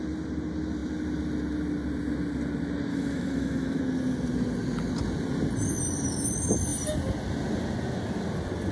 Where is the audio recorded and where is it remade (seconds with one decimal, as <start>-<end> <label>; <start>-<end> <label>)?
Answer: 0.0-2.9 recorded; 2.9-3.8 remade; 3.8-8.7 recorded